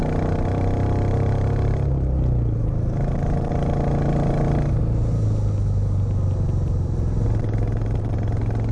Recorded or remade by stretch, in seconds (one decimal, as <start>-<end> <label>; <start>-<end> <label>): 0.0-8.7 recorded